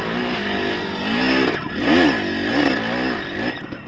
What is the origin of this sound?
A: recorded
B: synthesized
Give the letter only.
A